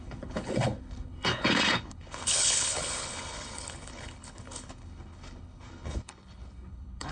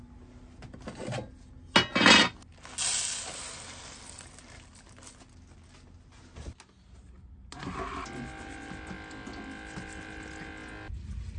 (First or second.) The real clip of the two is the second